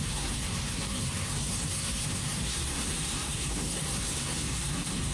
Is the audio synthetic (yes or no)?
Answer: yes